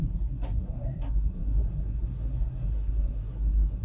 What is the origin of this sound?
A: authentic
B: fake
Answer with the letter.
B